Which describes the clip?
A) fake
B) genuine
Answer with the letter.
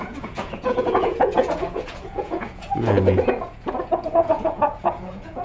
A